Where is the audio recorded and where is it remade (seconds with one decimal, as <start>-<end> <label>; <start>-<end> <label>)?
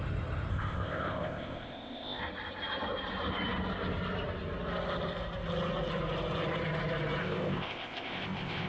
0.0-0.5 recorded; 0.5-2.2 remade; 2.2-7.2 recorded; 7.2-8.7 remade